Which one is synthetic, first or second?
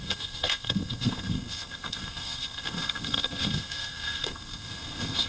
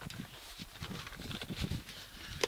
first